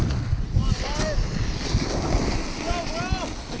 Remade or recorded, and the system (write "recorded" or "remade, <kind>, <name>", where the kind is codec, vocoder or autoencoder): recorded